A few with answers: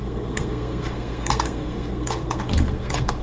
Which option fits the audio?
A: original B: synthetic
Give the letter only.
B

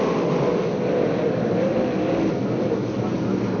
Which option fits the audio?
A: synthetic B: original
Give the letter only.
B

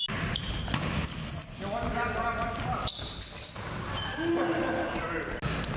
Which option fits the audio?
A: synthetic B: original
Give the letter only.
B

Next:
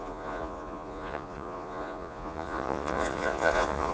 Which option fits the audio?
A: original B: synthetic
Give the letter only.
B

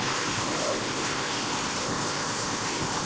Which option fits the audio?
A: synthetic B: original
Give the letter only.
A